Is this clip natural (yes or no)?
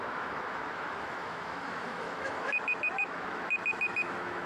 no